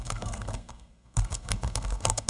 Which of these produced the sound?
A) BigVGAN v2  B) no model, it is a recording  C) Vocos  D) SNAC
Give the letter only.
D